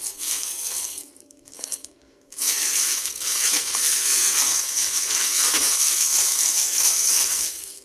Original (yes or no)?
no